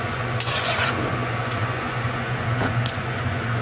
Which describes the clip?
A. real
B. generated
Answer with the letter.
B